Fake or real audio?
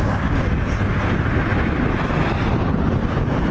real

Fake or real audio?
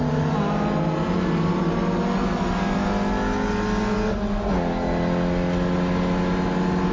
real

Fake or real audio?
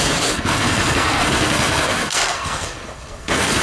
fake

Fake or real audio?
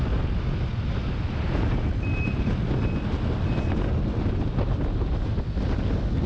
real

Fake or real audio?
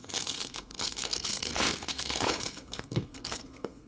fake